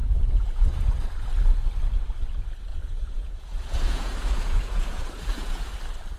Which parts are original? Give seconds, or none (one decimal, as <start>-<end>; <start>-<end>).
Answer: 1.0-2.7; 5.7-6.2